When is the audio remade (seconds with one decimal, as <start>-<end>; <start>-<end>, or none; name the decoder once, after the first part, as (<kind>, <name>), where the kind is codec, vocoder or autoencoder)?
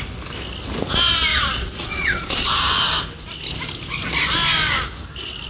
1.3-2.6 (vocoder, Vocos)